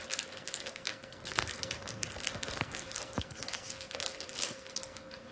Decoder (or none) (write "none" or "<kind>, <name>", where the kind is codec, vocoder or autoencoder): codec, SNAC